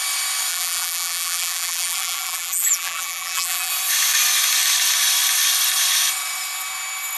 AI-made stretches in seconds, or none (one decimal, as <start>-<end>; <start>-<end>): 0.5-3.7